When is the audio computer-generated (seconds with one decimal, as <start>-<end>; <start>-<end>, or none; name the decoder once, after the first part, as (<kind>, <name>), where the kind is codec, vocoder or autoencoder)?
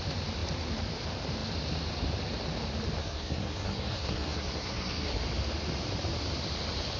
3.0-5.2 (codec, SNAC)